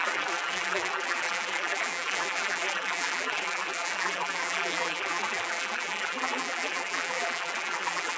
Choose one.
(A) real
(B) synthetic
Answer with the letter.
B